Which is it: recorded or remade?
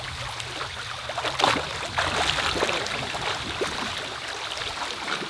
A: recorded